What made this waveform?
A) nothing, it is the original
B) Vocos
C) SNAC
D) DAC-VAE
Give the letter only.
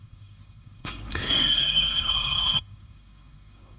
C